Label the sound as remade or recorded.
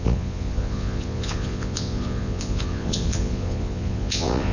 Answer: remade